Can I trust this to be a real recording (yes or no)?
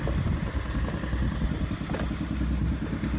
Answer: yes